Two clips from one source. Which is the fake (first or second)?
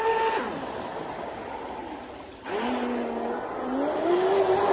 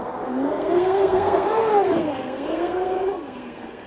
second